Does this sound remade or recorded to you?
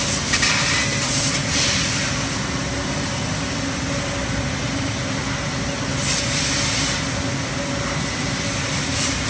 recorded